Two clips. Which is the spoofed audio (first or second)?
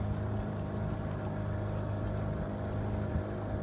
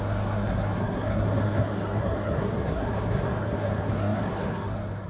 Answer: second